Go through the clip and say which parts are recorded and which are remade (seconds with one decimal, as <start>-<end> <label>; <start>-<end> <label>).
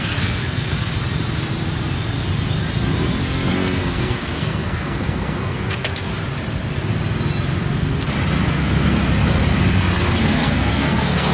0.0-0.9 remade; 0.9-3.2 recorded; 3.2-6.1 remade; 6.1-8.5 recorded; 8.5-9.0 remade; 9.0-10.2 recorded; 10.2-11.3 remade